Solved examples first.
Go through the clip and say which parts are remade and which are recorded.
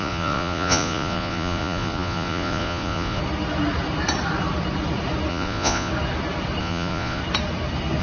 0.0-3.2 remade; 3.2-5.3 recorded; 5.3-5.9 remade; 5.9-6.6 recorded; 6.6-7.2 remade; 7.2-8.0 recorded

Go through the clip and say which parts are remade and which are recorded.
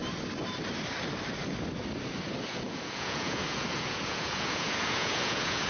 0.0-2.5 recorded; 2.5-5.7 remade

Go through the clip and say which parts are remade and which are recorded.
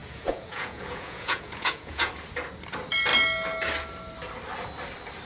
0.0-2.1 remade; 2.1-5.3 recorded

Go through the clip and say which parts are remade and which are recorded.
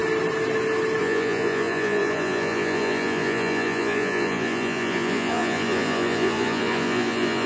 0.0-1.0 recorded; 1.0-7.5 remade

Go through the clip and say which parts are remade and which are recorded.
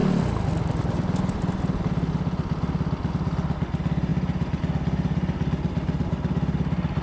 0.0-7.0 recorded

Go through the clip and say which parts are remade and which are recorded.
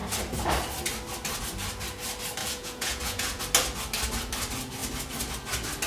0.0-2.4 recorded; 2.4-3.4 remade; 3.4-5.9 recorded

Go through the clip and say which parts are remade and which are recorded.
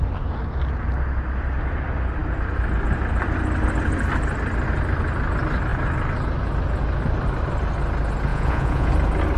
0.0-8.3 recorded; 8.3-8.9 remade; 8.9-9.4 recorded